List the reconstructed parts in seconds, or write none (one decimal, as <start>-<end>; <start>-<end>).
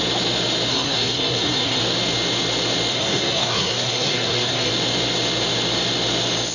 0.7-1.8; 2.9-4.7